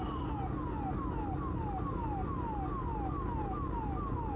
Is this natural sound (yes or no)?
yes